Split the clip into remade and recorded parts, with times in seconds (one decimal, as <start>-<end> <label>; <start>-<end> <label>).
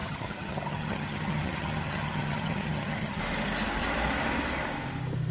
0.0-3.2 remade; 3.2-5.3 recorded